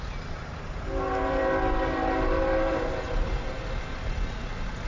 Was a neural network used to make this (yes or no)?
no